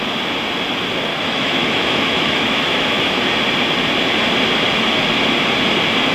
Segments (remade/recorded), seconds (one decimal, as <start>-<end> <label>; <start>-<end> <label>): 0.0-1.1 recorded; 1.1-3.1 remade; 3.1-6.1 recorded